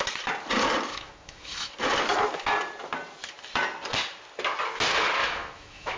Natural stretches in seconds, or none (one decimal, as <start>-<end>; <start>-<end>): 0.0-0.9; 1.7-5.2